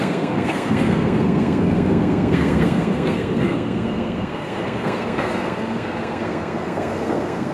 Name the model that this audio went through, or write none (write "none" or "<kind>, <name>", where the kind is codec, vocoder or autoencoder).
codec, SNAC